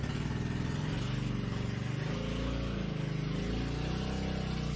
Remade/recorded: recorded